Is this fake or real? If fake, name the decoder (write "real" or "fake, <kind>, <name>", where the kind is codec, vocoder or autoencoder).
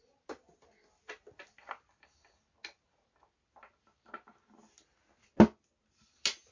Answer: real